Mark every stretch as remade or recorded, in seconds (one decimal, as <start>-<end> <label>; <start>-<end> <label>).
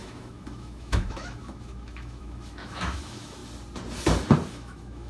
0.0-3.4 remade; 3.4-4.5 recorded; 4.5-5.1 remade